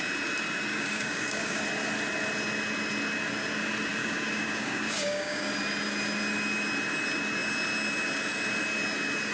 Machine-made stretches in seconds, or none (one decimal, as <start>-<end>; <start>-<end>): 0.7-1.6; 3.9-5.5